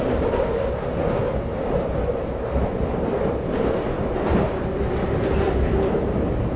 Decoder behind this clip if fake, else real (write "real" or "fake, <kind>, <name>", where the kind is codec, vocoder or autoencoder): real